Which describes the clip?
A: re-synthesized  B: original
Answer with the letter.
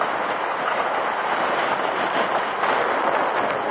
B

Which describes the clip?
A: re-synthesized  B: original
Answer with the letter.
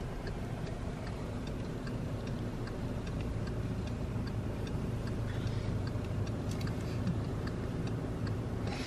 A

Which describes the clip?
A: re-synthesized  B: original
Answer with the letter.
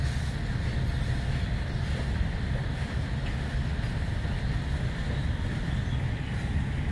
B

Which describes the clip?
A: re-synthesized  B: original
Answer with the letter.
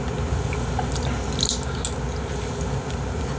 B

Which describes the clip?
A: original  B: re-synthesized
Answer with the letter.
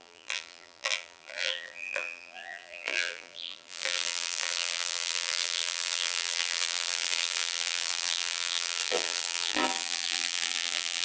B